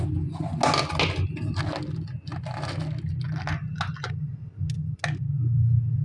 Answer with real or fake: real